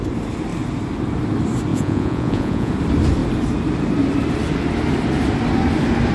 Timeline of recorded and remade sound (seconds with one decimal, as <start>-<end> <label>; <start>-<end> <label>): 0.0-1.7 recorded; 1.7-2.7 remade; 2.7-6.1 recorded